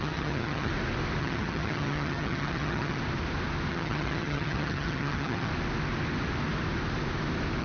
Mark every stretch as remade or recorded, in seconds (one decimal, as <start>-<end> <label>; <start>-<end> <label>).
0.0-0.7 remade; 0.7-1.2 recorded; 1.2-3.0 remade; 3.0-3.7 recorded; 3.7-5.5 remade; 5.5-7.6 recorded